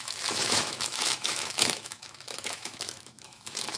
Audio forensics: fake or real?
fake